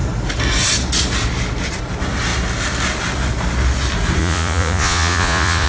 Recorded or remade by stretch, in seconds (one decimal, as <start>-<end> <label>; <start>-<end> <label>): 0.0-4.2 recorded; 4.2-5.7 remade